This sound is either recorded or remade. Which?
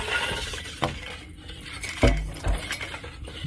recorded